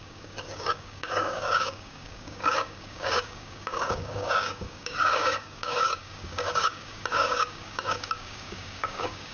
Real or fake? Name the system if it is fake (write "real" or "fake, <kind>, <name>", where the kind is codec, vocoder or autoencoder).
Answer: fake, codec, DAC